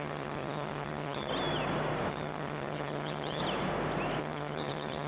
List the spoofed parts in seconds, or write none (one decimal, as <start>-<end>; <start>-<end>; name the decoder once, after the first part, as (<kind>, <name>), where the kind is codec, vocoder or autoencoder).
0.0-1.3 (vocoder, HiFi-GAN); 2.1-3.4; 4.2-5.1

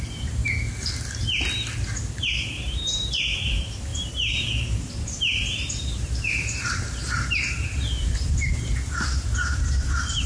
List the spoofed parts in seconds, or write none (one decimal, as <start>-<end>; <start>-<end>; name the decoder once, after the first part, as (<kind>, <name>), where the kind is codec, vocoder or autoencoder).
0.0-0.4 (vocoder, BigVGAN v2); 2.1-10.3

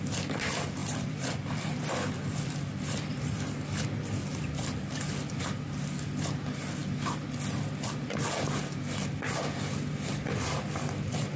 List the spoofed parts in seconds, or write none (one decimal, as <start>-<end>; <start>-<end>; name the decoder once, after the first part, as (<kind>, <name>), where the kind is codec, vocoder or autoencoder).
0.8-3.4 (vocoder, BigVGAN v2); 4.2-5.4

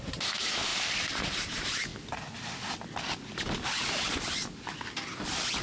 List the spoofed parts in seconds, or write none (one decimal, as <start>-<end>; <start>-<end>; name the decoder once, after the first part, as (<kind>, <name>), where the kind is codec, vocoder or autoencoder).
0.0-0.7 (vocoder, BigVGAN v2); 1.3-1.9